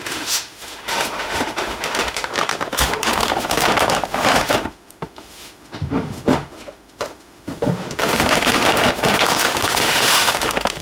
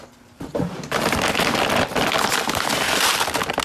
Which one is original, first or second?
second